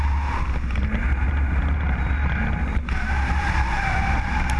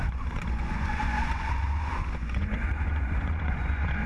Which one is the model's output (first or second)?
second